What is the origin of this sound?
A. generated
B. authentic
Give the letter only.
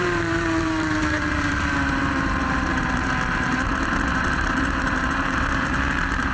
A